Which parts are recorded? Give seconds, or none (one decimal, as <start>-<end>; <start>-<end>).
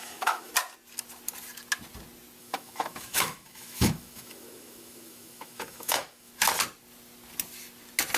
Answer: 0.5-2.4; 6.3-8.2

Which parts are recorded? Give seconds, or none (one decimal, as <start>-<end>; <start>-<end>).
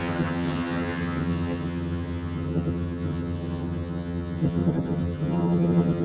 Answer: none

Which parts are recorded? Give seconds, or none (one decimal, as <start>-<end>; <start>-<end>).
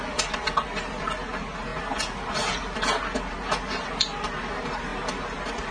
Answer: 0.0-5.7